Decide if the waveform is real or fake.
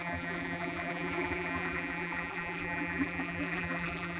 fake